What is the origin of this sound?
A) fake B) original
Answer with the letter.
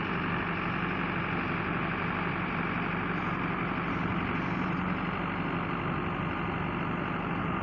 B